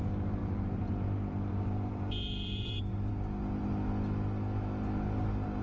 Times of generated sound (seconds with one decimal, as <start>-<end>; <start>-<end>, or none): 0.4-0.9; 1.5-3.1